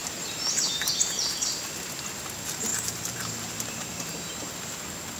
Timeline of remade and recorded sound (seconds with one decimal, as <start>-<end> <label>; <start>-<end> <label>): 0.0-1.5 remade; 1.5-2.7 recorded; 2.7-4.5 remade; 4.5-5.2 recorded